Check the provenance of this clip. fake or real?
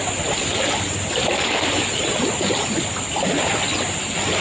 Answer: real